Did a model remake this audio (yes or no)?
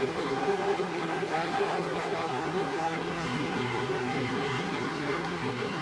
yes